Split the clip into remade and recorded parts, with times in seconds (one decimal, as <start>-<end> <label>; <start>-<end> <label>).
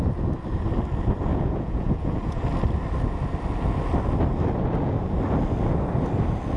0.0-1.3 recorded; 1.3-2.4 remade; 2.4-6.6 recorded